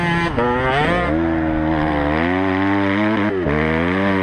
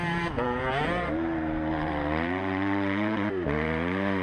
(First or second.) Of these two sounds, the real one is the first